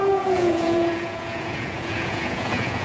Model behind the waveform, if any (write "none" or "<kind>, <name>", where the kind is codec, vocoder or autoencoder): vocoder, Vocos